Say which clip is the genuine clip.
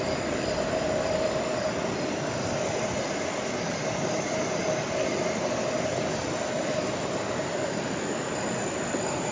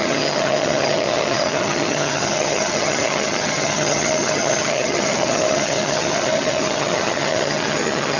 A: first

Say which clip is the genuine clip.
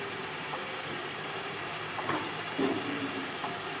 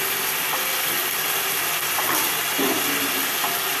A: second